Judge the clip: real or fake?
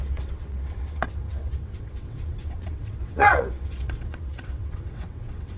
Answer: fake